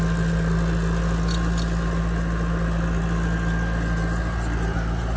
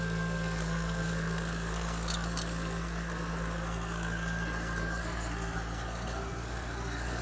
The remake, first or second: second